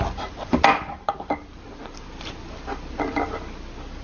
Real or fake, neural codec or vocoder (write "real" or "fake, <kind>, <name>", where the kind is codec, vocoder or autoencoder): real